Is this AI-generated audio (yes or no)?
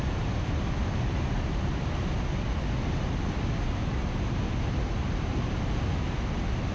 no